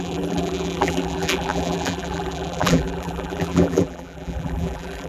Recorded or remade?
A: remade